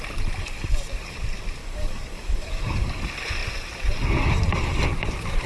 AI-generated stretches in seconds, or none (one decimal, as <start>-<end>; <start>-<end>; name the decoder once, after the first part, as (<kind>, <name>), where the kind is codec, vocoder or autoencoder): 1.6-3.0 (codec, DAC)